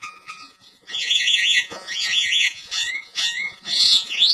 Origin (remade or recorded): remade